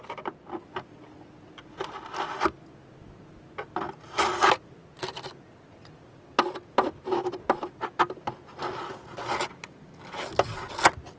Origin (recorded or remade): recorded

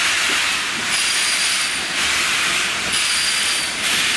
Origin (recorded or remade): recorded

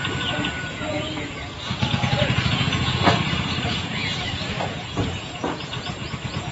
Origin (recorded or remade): remade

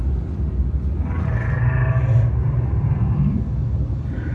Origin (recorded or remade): recorded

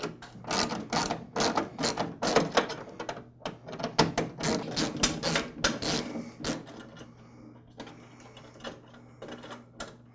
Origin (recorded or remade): recorded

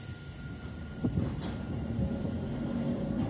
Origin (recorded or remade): recorded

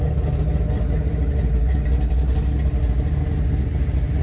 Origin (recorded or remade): recorded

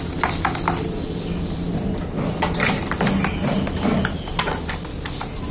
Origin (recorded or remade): recorded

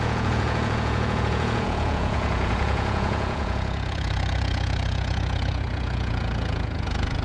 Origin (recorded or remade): remade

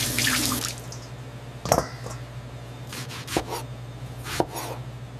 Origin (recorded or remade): recorded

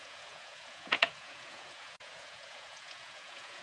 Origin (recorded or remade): remade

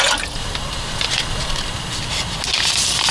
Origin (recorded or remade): recorded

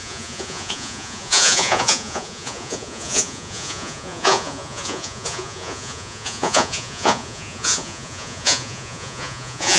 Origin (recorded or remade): remade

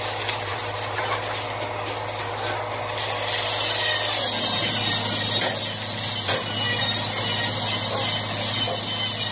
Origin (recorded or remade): recorded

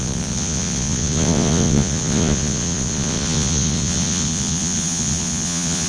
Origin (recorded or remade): remade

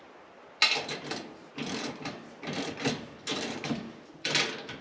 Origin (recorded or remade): recorded